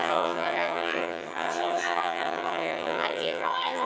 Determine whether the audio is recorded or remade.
remade